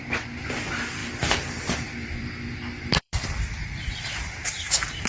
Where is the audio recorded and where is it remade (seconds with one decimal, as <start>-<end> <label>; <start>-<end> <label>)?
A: 0.0-1.0 recorded; 1.0-3.3 remade; 3.3-5.1 recorded